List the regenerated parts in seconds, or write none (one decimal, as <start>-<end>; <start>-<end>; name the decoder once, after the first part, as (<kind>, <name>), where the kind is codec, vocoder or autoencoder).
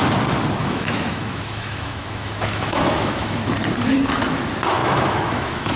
0.6-3.4 (autoencoder, DAC-VAE); 4.8-5.8